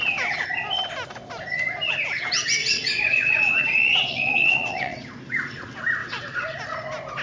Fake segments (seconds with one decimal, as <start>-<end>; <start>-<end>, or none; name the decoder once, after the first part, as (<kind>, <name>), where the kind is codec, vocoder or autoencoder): 2.6-5.0 (vocoder, WaveNeXt); 6.0-6.6